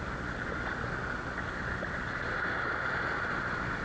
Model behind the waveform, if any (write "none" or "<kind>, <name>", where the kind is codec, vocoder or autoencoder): none